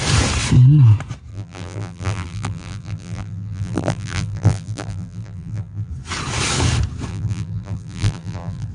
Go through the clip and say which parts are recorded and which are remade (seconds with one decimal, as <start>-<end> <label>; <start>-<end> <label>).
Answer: 0.0-1.3 recorded; 1.3-5.9 remade; 5.9-7.1 recorded; 7.1-8.7 remade